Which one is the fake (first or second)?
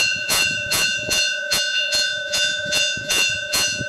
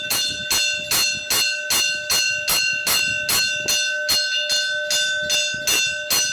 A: first